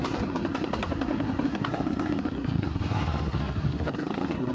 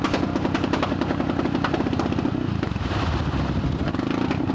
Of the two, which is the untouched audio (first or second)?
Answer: second